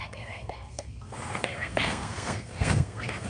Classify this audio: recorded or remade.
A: remade